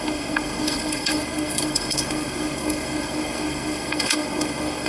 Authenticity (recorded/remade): remade